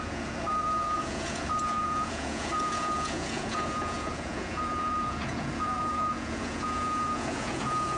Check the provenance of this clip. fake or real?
fake